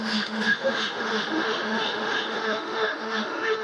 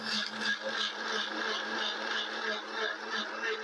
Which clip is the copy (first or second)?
first